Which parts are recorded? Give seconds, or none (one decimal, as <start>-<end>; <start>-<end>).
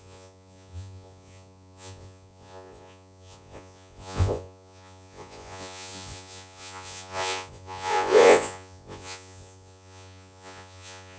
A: none